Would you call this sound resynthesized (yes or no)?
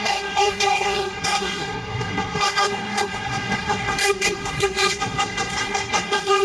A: yes